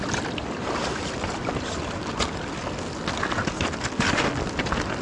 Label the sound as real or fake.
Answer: real